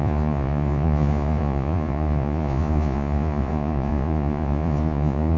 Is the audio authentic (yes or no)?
no